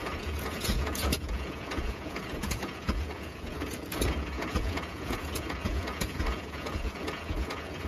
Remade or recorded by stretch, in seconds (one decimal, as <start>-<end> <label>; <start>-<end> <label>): 0.0-7.9 remade